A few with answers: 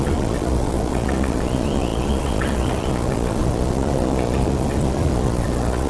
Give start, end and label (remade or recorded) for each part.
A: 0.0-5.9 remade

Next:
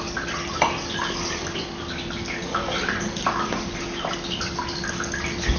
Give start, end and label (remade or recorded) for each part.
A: 0.0-5.6 recorded

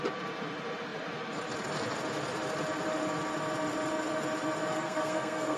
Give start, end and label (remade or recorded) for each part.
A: 0.0-4.7 recorded; 4.7-5.6 remade

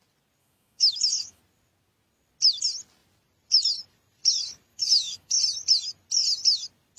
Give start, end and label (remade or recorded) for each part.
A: 0.0-0.4 recorded; 0.4-1.4 remade; 1.4-4.7 recorded; 4.7-5.4 remade; 5.4-7.0 recorded

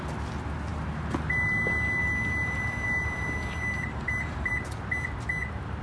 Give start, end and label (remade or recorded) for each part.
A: 0.0-2.0 recorded; 2.0-4.5 remade; 4.5-5.8 recorded